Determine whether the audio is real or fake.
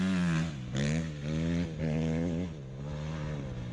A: real